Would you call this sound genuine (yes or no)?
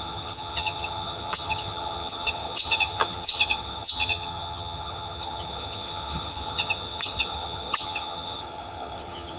no